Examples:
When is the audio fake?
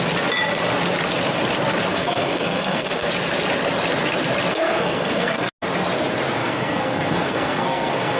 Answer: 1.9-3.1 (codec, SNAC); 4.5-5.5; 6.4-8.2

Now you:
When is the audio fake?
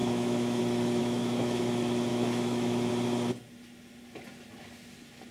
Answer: 0.0-0.6 (autoencoder, DAC-VAE); 1.0-1.6; 2.1-2.9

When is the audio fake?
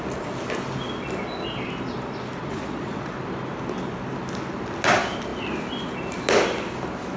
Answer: 2.4-3.1 (vocoder, Vocos)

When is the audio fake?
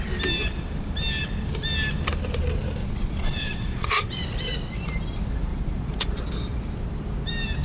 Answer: 2.8-4.2 (vocoder, Vocos); 5.5-6.2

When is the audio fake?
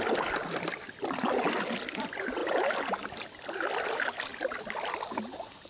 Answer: none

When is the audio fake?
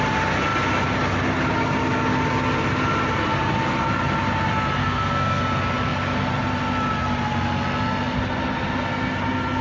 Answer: 4.8-5.4 (codec, SNAC)